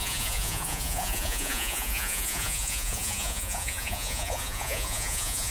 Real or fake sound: fake